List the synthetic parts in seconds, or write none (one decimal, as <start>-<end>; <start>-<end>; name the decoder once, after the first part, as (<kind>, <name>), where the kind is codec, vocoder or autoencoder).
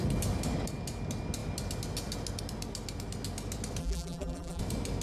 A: 3.8-4.6 (vocoder, BigVGAN v2)